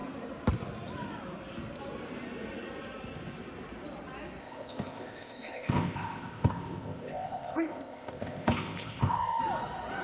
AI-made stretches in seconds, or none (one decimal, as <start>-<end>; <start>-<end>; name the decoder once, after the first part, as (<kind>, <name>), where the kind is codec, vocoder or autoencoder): 4.4-9.4 (codec, ZipCodec)

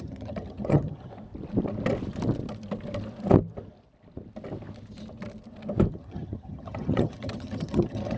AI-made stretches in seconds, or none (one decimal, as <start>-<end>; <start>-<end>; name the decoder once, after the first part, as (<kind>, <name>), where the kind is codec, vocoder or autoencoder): 0.0-1.1 (vocoder, HiFi-GAN); 5.9-8.2

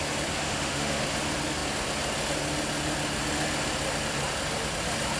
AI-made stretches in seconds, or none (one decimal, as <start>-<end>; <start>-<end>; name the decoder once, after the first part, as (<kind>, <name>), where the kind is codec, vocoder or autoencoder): 0.4-1.0 (autoencoder, DAC-VAE)

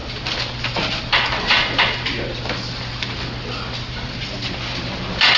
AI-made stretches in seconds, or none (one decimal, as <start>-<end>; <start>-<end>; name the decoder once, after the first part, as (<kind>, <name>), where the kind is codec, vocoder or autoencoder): none

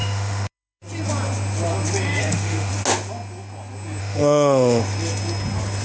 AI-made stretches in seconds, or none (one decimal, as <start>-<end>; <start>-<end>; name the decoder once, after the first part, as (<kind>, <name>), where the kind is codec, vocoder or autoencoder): 0.0-0.8 (autoencoder, DAC-VAE); 2.2-2.7; 4.0-4.8